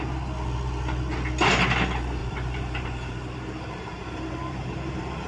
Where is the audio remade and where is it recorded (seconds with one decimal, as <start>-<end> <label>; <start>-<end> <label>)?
0.0-2.2 recorded; 2.2-5.3 remade